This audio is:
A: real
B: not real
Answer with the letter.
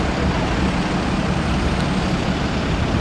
A